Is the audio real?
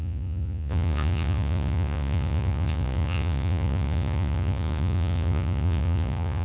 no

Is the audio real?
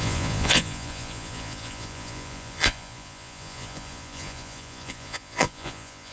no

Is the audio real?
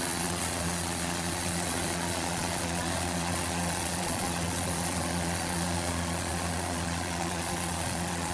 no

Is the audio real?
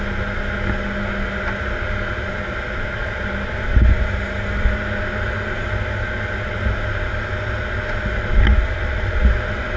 yes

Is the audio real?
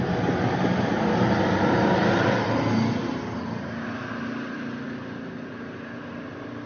yes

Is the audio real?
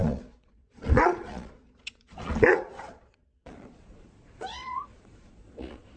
no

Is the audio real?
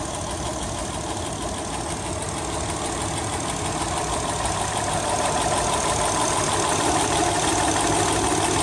yes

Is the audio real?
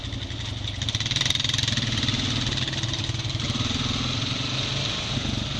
yes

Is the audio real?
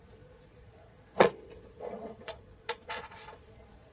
no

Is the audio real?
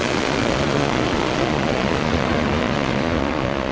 no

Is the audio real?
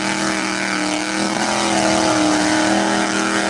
yes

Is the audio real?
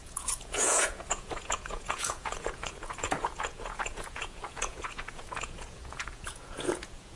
no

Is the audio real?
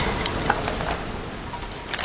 yes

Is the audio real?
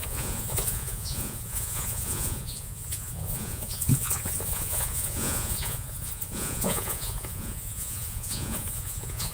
no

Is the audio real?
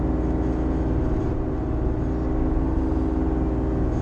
yes